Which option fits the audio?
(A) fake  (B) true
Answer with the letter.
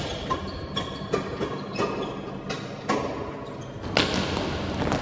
B